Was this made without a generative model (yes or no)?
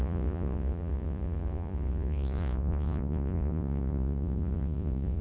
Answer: no